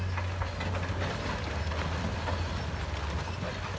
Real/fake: real